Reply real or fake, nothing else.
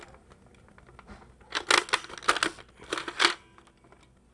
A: real